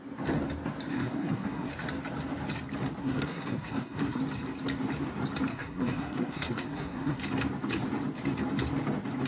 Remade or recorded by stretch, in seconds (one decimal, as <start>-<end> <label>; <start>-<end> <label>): 0.0-0.9 recorded; 0.9-1.7 remade; 1.7-3.0 recorded; 3.0-4.2 remade; 4.2-5.5 recorded; 5.5-7.2 remade; 7.2-9.3 recorded